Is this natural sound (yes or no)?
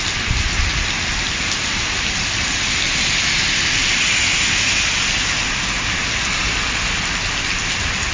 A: yes